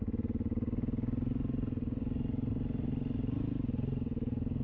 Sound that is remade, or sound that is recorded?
recorded